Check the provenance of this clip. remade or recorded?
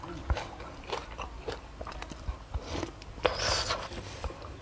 remade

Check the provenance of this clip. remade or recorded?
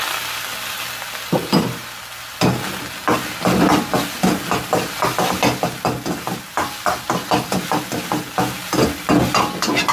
recorded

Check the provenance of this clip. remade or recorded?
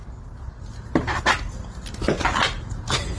recorded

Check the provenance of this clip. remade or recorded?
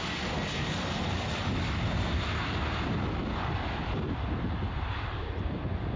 recorded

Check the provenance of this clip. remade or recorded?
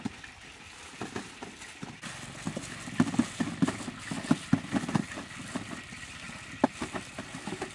recorded